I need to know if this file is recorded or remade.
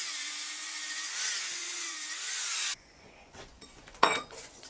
remade